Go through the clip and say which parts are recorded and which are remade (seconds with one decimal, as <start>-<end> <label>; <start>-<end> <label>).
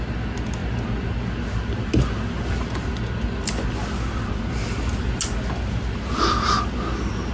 0.0-7.3 recorded